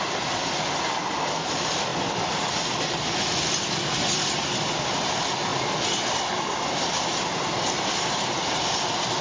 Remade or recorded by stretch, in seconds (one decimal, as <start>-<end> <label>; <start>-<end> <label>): 0.0-9.2 recorded